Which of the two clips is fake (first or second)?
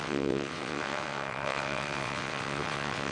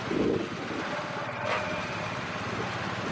first